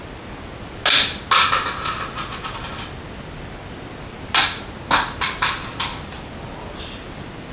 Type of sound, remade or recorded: recorded